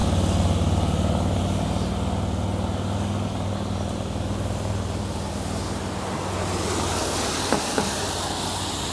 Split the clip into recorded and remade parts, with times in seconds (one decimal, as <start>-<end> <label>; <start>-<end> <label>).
0.0-8.9 recorded